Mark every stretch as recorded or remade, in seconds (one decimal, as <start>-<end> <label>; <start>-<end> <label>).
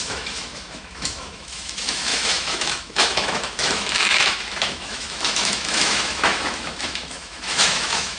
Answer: 0.0-8.2 remade